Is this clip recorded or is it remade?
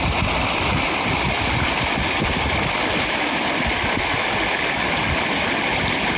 recorded